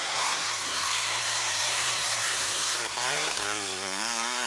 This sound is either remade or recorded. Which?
remade